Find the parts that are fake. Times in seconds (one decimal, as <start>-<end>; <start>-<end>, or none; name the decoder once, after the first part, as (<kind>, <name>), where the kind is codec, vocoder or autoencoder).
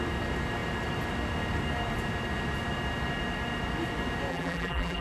4.3-5.0 (vocoder, BigVGAN v2)